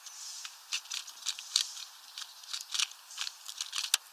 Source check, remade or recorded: recorded